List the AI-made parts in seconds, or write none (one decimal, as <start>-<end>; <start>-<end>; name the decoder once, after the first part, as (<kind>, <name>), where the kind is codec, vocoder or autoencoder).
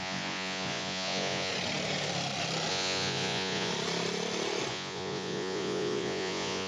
0.0-1.5 (vocoder, Vocos); 2.7-3.7; 4.7-6.7